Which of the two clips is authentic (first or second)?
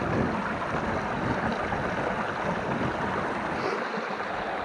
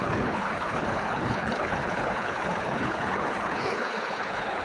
first